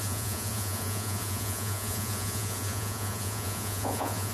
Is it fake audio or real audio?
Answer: fake